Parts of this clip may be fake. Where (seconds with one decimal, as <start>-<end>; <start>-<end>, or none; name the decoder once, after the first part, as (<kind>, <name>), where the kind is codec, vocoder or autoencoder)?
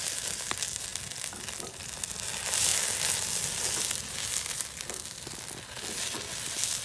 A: none